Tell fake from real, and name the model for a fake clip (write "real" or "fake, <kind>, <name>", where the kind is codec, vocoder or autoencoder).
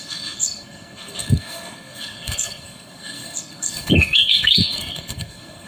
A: fake, codec, SNAC